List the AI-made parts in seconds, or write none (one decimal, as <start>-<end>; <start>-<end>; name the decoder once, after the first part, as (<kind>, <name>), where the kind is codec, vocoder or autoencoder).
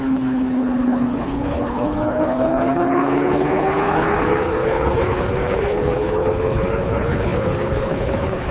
0.0-8.5 (codec, HILCodec)